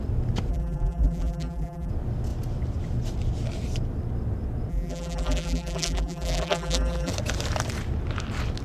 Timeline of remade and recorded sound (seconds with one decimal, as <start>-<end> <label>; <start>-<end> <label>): 0.0-0.5 recorded; 0.5-1.9 remade; 1.9-4.7 recorded; 4.7-7.1 remade; 7.1-8.6 recorded